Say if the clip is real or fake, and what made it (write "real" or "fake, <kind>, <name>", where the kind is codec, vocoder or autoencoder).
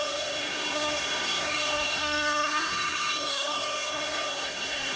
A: fake, codec, SNAC